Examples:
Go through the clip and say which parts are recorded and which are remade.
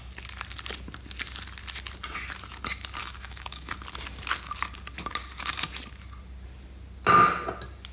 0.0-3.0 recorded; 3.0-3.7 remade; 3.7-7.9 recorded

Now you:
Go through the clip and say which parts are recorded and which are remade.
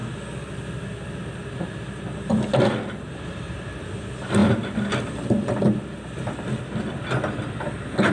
0.0-8.1 recorded